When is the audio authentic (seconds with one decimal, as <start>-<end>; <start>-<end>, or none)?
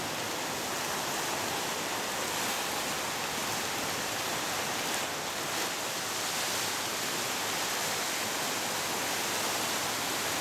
0.0-10.4